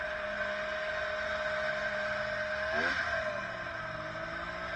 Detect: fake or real real